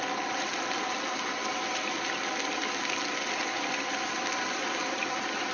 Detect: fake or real real